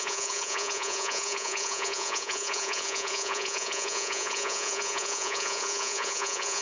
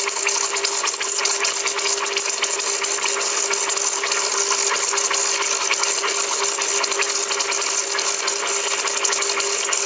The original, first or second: second